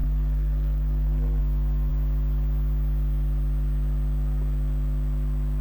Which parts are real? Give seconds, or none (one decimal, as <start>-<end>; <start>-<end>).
1.4-5.6